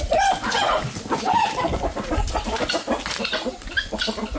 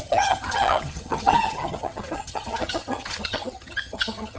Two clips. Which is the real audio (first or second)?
first